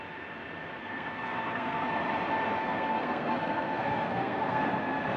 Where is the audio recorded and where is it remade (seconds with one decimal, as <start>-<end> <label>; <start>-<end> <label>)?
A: 0.0-0.8 recorded; 0.8-1.9 remade; 1.9-2.6 recorded; 2.6-4.6 remade; 4.6-5.2 recorded